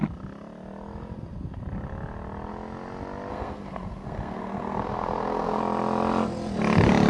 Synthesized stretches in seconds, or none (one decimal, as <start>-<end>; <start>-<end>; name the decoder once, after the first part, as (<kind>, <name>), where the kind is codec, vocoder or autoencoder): 3.3-5.6 (codec, SNAC)